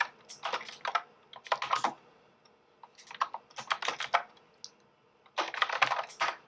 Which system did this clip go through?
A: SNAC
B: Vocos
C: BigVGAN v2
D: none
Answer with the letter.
D